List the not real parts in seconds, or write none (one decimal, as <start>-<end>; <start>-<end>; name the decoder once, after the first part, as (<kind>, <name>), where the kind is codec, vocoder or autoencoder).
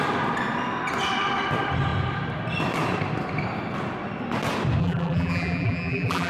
4.8-6.3 (vocoder, BigVGAN v2)